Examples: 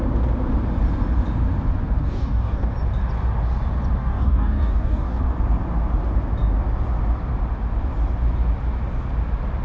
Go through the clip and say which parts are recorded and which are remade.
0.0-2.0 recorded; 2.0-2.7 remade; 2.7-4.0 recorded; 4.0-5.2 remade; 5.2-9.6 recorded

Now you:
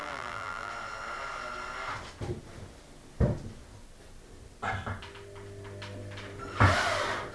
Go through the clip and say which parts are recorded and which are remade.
0.0-0.7 remade; 0.7-7.3 recorded

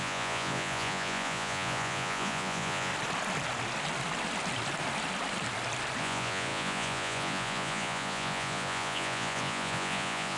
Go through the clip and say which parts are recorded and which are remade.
0.0-2.9 remade; 2.9-6.0 recorded; 6.0-10.4 remade

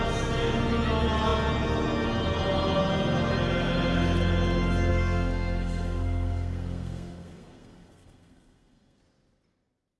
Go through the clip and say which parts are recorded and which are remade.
0.0-4.9 recorded; 4.9-9.0 remade; 9.0-10.0 recorded

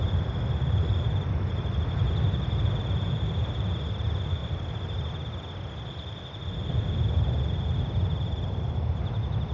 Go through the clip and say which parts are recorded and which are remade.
0.0-9.5 recorded